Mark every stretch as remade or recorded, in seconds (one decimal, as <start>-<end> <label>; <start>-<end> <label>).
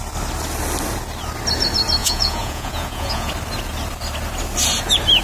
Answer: 0.0-2.0 recorded; 2.0-3.3 remade; 3.3-5.2 recorded